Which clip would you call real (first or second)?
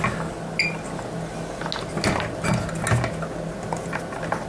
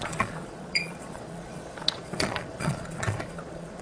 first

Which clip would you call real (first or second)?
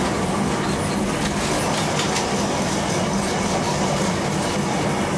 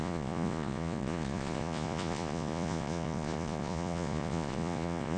first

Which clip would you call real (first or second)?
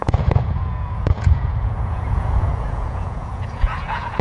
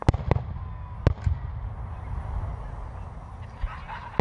second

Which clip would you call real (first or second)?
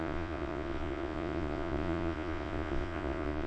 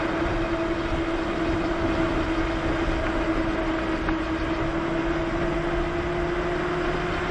second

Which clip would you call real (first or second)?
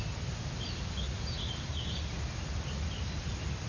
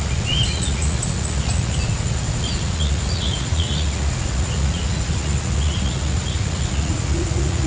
first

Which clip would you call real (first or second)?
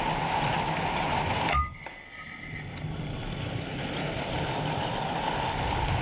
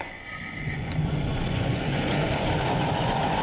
first